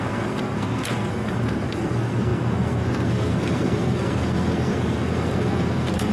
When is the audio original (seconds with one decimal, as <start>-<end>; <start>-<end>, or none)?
none